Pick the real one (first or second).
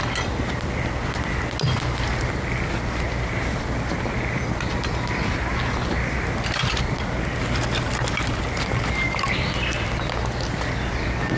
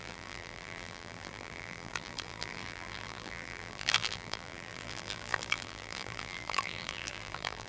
first